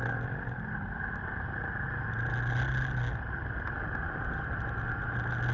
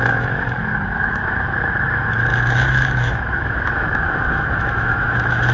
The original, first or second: first